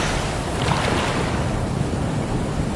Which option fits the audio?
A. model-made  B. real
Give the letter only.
B